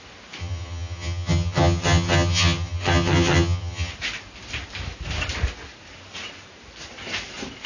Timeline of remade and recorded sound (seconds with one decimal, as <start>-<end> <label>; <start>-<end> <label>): 0.0-0.4 recorded; 0.4-3.9 remade; 3.9-7.7 recorded